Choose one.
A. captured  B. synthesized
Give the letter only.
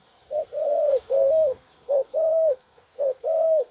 B